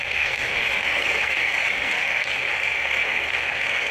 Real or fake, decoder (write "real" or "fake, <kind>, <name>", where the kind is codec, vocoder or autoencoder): fake, codec, SNAC